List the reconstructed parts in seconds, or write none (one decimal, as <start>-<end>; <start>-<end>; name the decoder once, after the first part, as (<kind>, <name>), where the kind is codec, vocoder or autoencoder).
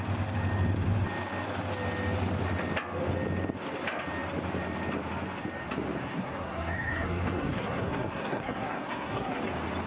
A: 6.0-9.4 (codec, SNAC)